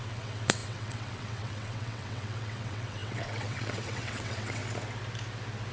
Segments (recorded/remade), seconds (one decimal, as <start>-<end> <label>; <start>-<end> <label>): 0.0-4.6 remade; 4.6-5.7 recorded